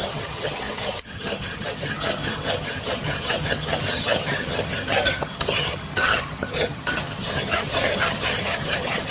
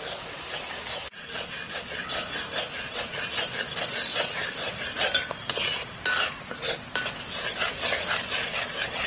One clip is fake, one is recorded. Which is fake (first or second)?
first